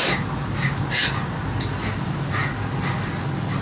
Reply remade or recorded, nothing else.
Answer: recorded